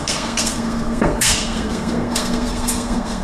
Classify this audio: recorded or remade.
remade